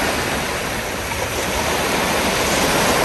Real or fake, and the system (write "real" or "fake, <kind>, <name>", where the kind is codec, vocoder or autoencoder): fake, vocoder, BigVGAN v2